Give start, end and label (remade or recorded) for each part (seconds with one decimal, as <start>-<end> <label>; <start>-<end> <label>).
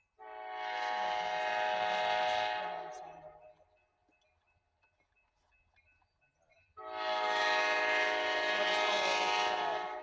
0.0-10.0 recorded